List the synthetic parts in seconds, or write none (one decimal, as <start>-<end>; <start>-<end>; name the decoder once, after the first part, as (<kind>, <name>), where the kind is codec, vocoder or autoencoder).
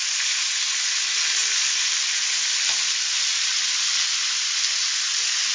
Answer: none